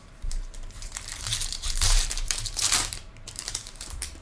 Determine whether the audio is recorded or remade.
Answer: remade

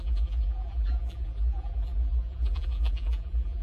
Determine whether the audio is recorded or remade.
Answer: remade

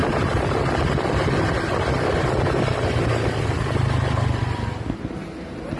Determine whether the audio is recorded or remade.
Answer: recorded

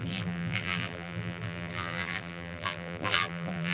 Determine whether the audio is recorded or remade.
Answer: remade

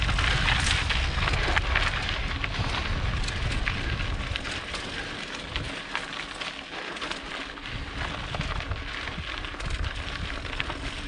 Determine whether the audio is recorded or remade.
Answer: recorded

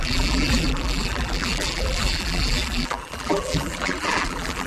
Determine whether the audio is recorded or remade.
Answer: remade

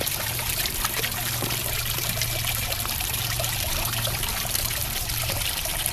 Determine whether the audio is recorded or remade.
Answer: remade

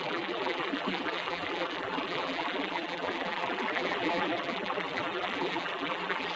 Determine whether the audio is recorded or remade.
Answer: remade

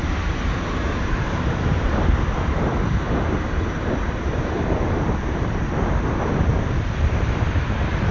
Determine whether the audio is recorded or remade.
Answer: remade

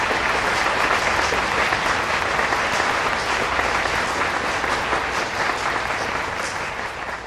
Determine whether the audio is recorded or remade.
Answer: recorded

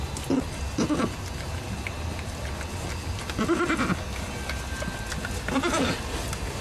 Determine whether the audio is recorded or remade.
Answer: recorded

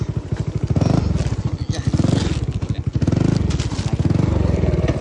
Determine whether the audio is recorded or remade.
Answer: recorded